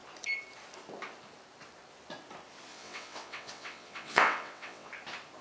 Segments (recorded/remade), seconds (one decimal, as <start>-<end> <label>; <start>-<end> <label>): 0.0-2.7 recorded; 2.7-4.9 remade; 4.9-5.4 recorded